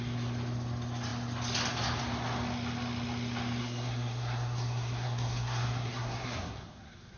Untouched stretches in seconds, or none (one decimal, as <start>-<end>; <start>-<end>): 0.0-3.6